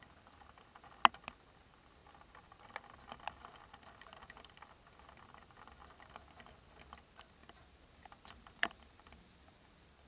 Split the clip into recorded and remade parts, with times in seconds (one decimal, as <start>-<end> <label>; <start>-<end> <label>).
0.0-7.4 recorded; 7.4-9.7 remade; 9.7-10.1 recorded